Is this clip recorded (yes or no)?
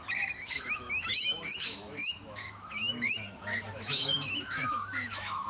no